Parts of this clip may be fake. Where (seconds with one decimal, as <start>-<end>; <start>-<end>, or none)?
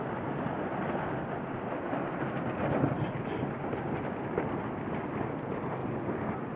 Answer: 0.7-3.7